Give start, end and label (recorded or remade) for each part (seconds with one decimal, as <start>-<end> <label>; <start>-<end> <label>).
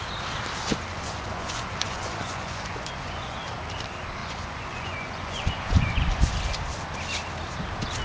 0.0-0.9 recorded; 0.9-3.4 remade; 3.4-4.2 recorded; 4.2-6.3 remade; 6.3-8.0 recorded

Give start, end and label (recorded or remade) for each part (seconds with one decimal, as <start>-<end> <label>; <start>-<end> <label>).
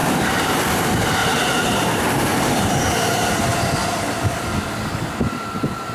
0.0-0.6 remade; 0.6-1.2 recorded; 1.2-3.3 remade; 3.3-5.9 recorded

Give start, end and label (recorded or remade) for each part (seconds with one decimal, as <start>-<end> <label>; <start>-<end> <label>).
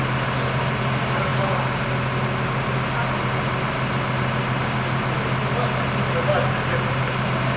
0.0-7.6 recorded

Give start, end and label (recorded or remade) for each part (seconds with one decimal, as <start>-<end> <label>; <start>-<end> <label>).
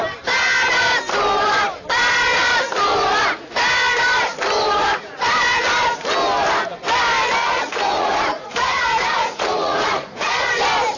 0.0-7.4 recorded; 7.4-10.5 remade; 10.5-11.0 recorded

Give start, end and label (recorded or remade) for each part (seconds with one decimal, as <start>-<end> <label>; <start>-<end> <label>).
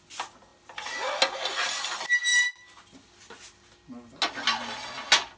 0.0-5.4 recorded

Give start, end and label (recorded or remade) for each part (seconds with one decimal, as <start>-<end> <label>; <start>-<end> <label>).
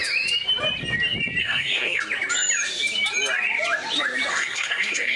0.0-1.4 recorded; 1.4-2.0 remade; 2.0-4.3 recorded; 4.3-5.2 remade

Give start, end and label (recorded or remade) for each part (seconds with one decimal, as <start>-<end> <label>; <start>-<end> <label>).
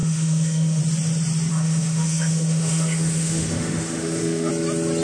0.0-0.8 remade; 0.8-1.5 recorded; 1.5-4.5 remade; 4.5-5.0 recorded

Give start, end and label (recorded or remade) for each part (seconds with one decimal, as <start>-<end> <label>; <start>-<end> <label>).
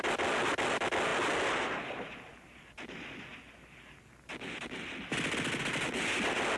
0.0-6.6 recorded